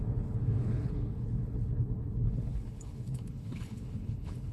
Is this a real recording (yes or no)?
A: no